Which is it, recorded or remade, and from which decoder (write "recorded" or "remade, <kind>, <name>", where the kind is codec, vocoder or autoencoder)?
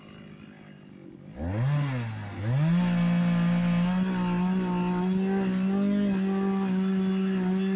recorded